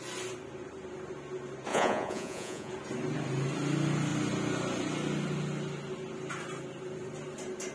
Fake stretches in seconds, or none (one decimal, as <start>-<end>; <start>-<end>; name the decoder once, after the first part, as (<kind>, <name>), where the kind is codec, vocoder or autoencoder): 1.7-2.7 (vocoder, Vocos)